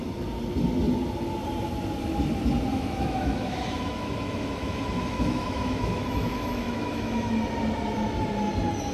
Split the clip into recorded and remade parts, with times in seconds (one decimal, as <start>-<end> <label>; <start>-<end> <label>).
0.0-2.7 recorded; 2.7-7.3 remade; 7.3-8.9 recorded